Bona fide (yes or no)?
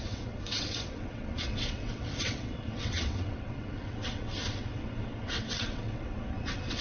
no